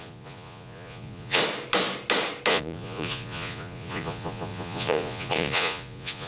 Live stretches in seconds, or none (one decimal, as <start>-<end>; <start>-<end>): 1.4-2.5